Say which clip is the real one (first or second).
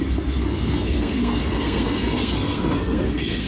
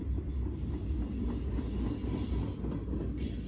second